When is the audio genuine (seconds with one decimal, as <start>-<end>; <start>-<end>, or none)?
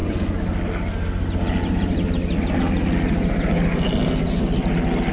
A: 0.0-5.1